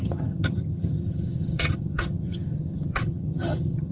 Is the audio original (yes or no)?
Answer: no